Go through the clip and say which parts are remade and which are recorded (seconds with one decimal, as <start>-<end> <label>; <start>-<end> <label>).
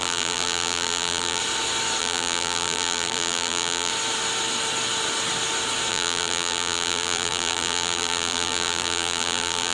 0.0-1.4 remade; 1.4-2.0 recorded; 2.0-3.9 remade; 3.9-5.9 recorded; 5.9-9.7 remade